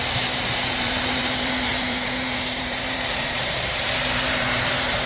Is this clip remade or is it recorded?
remade